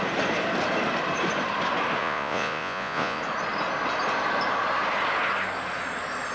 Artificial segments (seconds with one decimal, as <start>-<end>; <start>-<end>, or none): 2.0-3.2